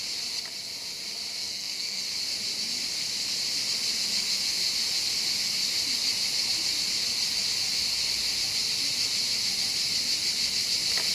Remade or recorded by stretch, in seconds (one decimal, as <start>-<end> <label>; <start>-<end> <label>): 0.0-1.4 recorded; 1.4-2.0 remade; 2.0-11.1 recorded